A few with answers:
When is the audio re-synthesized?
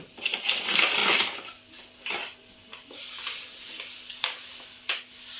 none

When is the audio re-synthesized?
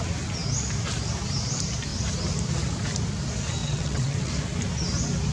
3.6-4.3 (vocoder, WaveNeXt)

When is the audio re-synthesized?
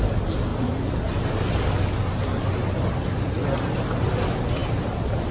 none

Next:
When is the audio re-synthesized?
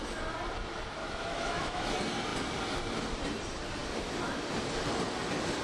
1.0-1.9 (autoencoder, DAC-VAE)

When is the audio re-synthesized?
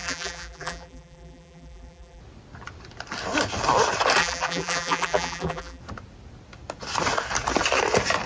0.0-2.2 (vocoder, BigVGAN v2); 4.2-5.8